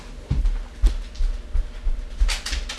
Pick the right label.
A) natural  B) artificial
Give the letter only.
A